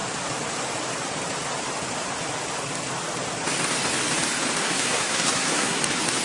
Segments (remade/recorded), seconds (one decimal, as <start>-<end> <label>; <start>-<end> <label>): 0.0-4.6 recorded; 4.6-5.8 remade; 5.8-6.2 recorded